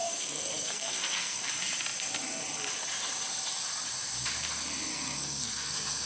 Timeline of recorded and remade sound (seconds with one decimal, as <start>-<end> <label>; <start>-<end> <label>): 0.0-1.5 remade; 1.5-4.9 recorded; 4.9-6.1 remade